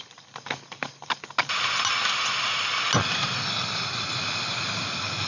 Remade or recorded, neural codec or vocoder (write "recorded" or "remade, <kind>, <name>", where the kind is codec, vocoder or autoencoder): recorded